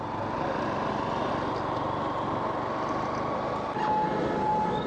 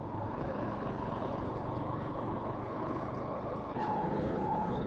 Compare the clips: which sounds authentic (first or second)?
first